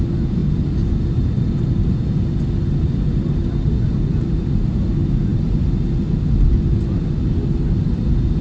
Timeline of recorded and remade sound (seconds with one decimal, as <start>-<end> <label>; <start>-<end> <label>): 0.0-8.4 recorded

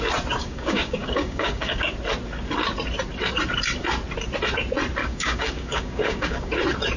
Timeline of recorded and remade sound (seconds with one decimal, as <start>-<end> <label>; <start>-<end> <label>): 0.0-0.4 recorded; 0.4-1.9 remade; 1.9-5.0 recorded; 5.0-6.6 remade; 6.6-7.0 recorded

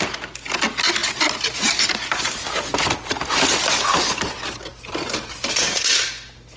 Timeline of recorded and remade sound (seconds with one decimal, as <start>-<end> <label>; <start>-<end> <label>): 0.0-6.6 recorded

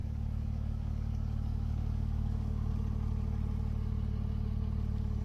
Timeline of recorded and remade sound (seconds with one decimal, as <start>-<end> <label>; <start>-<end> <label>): 0.0-2.7 remade; 2.7-5.2 recorded

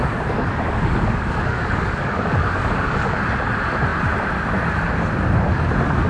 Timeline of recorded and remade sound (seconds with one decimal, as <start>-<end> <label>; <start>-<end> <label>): 0.0-3.2 remade; 3.2-6.1 recorded

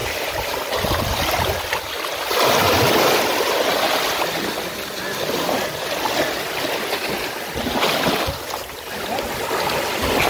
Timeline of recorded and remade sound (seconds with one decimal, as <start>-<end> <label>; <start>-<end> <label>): 0.0-10.3 recorded